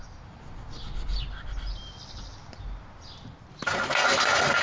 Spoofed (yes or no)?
no